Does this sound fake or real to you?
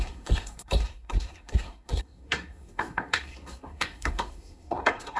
fake